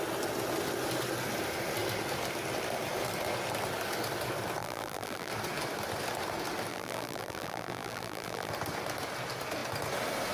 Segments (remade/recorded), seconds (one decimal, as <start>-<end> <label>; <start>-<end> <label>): 0.0-4.6 recorded; 4.6-5.3 remade; 5.3-6.7 recorded; 6.7-8.5 remade; 8.5-10.3 recorded